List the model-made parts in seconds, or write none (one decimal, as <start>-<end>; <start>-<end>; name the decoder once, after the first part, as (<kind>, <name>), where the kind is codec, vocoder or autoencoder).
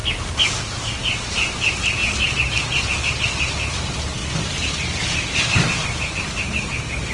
1.3-7.1 (vocoder, BigVGAN v2)